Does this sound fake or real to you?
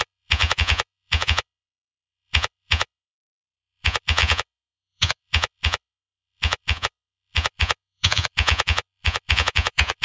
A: fake